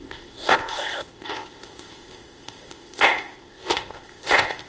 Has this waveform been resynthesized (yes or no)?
yes